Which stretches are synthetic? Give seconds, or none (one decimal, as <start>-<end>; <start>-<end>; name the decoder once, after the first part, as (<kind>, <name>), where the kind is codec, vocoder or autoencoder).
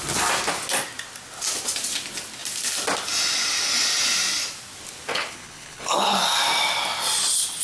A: 5.1-6.2 (codec, HILCodec)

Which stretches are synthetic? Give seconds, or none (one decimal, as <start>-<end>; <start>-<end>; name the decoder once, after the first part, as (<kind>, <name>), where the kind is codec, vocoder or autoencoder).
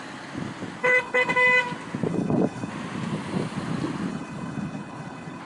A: 0.8-1.3 (codec, HILCodec); 2.1-2.7; 4.1-5.4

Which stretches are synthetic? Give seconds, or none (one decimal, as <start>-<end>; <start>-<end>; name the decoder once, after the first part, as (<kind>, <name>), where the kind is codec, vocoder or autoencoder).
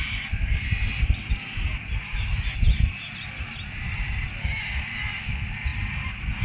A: none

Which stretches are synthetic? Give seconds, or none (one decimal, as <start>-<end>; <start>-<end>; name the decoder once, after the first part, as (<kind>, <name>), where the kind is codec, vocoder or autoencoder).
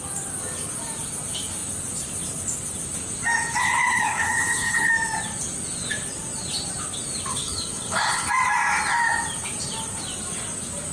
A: 3.6-4.9 (codec, HILCodec); 7.3-8.3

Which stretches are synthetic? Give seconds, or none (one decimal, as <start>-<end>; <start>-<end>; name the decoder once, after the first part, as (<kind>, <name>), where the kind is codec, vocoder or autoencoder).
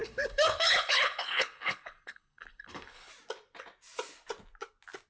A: 0.0-3.1 (codec, HILCodec)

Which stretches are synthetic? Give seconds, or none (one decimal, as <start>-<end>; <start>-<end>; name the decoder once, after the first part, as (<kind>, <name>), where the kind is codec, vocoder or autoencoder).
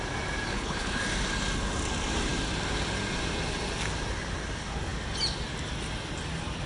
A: 0.5-1.0 (codec, HILCodec)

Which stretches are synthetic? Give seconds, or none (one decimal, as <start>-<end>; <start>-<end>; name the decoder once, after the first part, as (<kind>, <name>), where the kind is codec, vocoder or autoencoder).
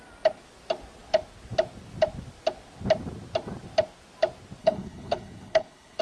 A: 4.6-6.0 (codec, HILCodec)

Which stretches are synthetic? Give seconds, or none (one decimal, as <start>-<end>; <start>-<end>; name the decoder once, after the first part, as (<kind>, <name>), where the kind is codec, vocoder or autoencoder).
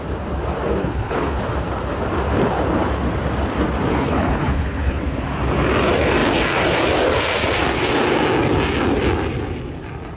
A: 0.8-1.4 (codec, HILCodec); 3.9-5.0